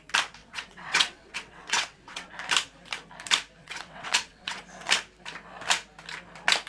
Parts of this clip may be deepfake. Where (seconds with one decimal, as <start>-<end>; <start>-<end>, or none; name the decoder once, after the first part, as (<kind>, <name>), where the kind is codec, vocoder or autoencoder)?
0.4-2.3 (vocoder, WaveNeXt); 3.6-4.6